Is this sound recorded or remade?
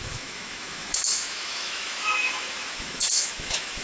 remade